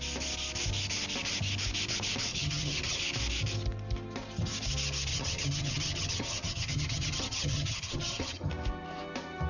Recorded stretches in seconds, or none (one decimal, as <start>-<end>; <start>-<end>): 0.0-2.3; 3.0-5.1; 8.5-9.5